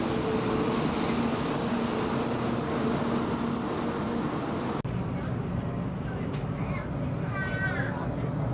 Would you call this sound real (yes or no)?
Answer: yes